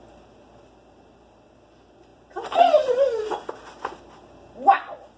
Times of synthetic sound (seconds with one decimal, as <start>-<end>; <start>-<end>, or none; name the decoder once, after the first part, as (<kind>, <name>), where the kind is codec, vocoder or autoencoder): none